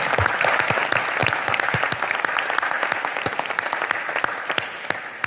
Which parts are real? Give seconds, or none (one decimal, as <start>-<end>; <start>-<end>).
0.0-5.3